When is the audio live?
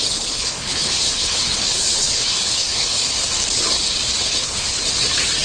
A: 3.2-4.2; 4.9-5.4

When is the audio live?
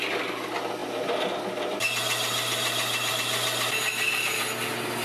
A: 0.0-5.0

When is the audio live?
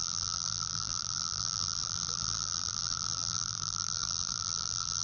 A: none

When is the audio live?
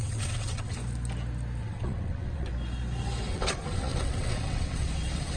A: 0.8-1.6; 2.5-3.3